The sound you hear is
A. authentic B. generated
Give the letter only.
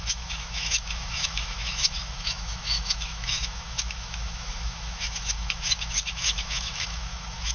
B